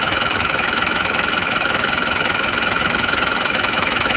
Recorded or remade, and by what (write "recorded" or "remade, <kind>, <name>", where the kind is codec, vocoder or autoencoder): remade, autoencoder, DAC-VAE